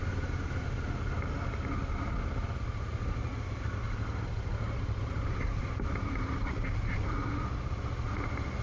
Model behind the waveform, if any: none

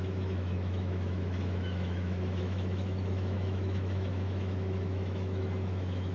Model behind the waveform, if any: autoencoder, DAC-VAE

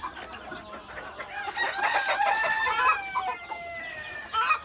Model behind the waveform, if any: none